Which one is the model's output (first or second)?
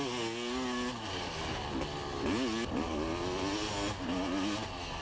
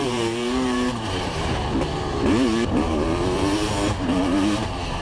second